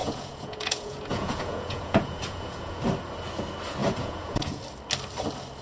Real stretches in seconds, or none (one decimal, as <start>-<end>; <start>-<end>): 2.8-3.8; 4.6-5.6